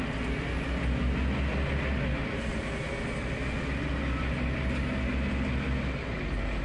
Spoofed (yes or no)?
no